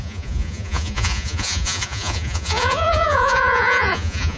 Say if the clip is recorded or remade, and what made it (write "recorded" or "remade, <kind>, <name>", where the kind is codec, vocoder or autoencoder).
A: remade, vocoder, Vocos